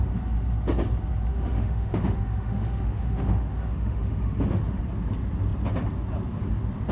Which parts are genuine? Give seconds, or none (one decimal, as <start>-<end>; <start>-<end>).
0.0-1.3; 4.8-6.9